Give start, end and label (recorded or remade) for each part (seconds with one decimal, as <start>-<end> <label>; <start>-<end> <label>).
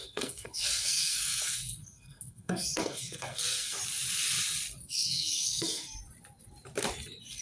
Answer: 0.0-3.8 remade; 3.8-4.8 recorded; 4.8-6.0 remade; 6.0-7.4 recorded